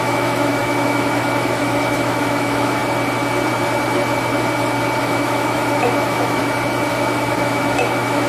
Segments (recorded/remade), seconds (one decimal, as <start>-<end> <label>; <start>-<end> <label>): 0.0-2.8 remade; 2.8-5.0 recorded; 5.0-6.4 remade; 6.4-6.9 recorded; 6.9-8.3 remade